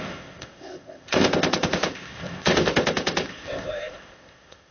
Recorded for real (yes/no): no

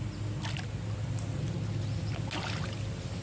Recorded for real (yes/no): yes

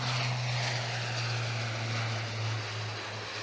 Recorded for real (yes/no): yes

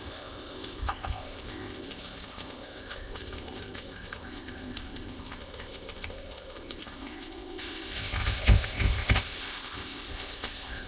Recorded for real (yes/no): no